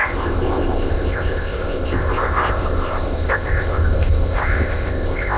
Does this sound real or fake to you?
fake